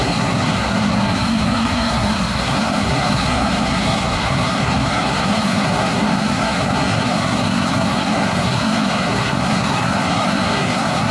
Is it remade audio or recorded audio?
remade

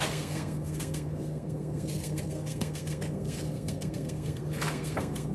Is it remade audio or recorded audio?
remade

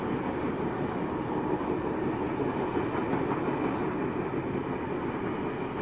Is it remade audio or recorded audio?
recorded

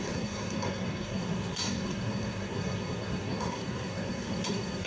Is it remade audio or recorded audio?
remade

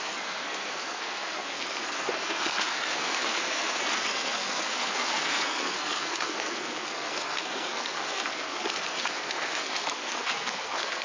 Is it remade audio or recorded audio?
remade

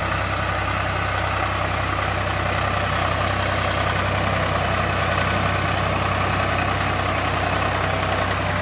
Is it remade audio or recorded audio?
recorded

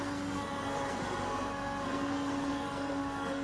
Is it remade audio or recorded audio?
remade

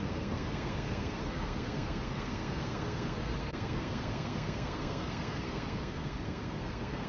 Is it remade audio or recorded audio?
remade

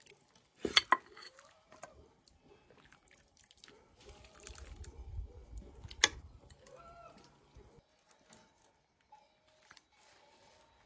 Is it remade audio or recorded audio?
recorded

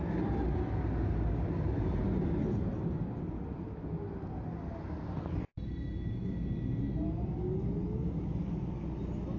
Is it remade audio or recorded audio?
recorded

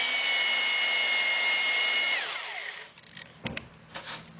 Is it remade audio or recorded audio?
recorded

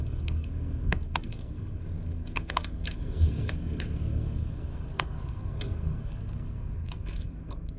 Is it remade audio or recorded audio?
remade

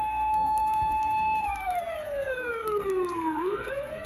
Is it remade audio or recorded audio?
remade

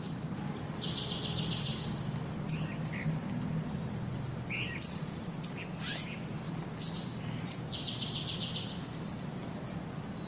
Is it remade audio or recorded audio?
recorded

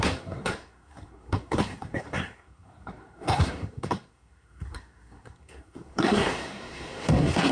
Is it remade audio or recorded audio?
remade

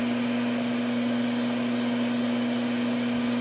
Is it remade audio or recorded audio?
recorded